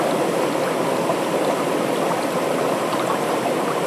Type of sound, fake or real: real